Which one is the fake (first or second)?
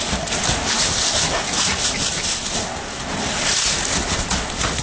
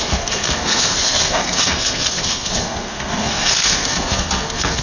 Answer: second